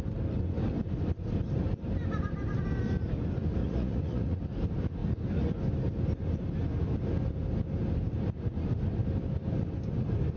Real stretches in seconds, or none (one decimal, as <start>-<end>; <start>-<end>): 0.0-3.6; 4.4-10.4